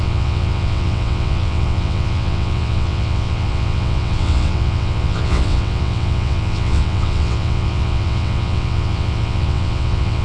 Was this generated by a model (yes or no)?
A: yes